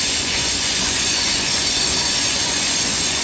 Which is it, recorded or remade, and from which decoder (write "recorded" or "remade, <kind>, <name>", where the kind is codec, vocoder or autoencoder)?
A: remade, vocoder, Vocos